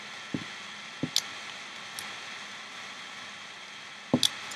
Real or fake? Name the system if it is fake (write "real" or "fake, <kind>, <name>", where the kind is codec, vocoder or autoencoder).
real